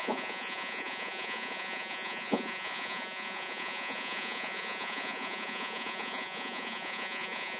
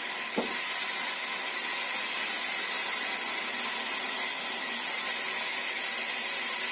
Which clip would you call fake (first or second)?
first